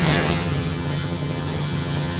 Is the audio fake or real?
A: fake